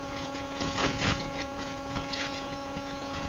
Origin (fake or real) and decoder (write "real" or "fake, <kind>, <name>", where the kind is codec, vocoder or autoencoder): fake, vocoder, Vocos